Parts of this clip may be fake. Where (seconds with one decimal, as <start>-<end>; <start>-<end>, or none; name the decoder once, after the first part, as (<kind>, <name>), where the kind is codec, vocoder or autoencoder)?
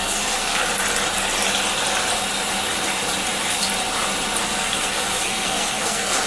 0.0-0.6 (codec, SNAC); 4.4-6.3